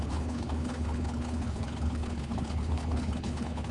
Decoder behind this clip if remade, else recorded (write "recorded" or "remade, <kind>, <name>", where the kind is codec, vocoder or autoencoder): remade, codec, HILCodec